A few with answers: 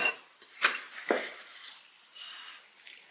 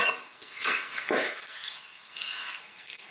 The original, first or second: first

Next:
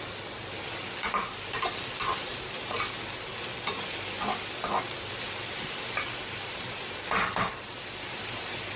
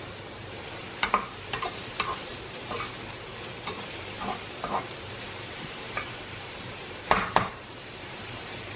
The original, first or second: first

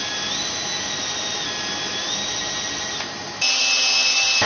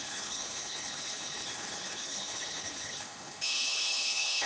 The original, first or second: first